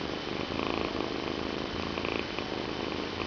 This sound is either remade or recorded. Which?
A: recorded